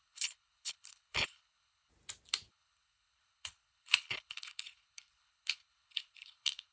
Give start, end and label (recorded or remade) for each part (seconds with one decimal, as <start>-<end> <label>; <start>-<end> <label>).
0.0-1.9 remade; 1.9-2.5 recorded; 2.5-6.7 remade